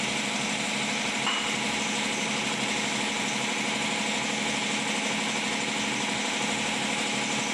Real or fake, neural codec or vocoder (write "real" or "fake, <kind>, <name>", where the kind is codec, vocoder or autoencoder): real